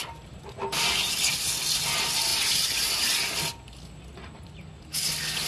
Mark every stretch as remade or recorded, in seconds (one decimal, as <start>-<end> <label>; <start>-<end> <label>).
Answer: 0.0-5.5 recorded